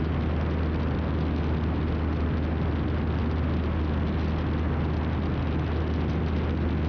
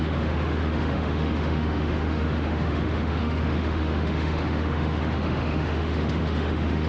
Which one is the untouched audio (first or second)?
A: first